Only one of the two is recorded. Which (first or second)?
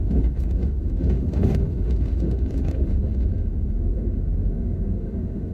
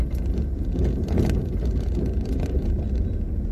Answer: second